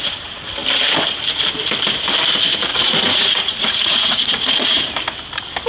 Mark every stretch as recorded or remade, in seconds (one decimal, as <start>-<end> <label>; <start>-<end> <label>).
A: 0.0-2.7 recorded; 2.7-4.9 remade; 4.9-5.7 recorded